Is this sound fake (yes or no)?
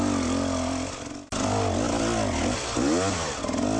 no